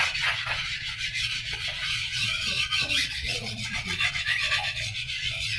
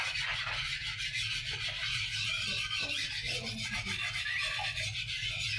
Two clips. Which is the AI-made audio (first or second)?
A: first